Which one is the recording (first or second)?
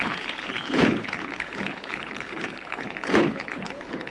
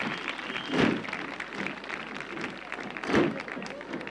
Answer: second